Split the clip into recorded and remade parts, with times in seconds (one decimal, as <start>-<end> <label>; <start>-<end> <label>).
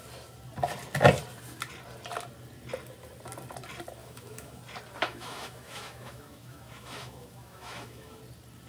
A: 0.0-4.0 recorded; 4.0-4.6 remade; 4.6-5.0 recorded; 5.0-8.2 remade; 8.2-8.7 recorded